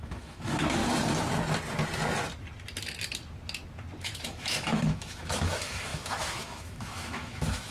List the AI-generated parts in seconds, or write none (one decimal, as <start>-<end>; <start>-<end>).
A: 0.0-0.8; 4.0-7.7